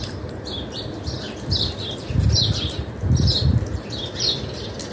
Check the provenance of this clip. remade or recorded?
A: remade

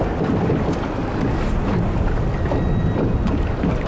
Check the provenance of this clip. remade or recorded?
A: recorded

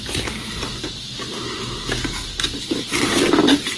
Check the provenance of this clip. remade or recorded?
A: recorded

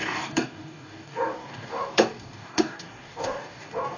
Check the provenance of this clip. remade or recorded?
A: remade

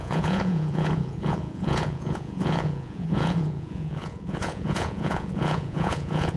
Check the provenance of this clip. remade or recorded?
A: remade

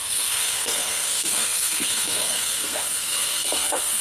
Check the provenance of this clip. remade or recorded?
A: remade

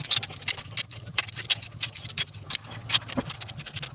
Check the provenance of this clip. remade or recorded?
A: recorded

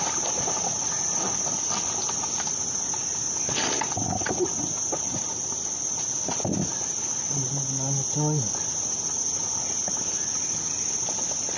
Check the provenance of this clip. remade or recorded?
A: recorded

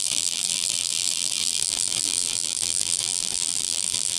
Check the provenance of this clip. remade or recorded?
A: remade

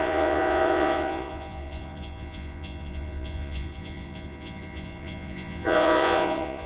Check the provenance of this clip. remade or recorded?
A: remade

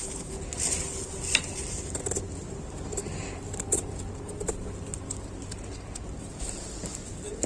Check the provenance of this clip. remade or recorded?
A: recorded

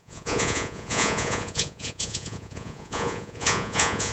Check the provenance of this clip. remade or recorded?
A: remade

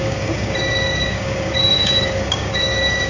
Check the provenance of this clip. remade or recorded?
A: remade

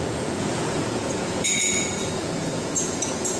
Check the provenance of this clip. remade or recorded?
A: remade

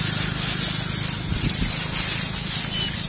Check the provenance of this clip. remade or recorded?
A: recorded